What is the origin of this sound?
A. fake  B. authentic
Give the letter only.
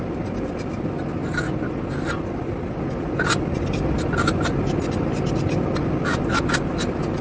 B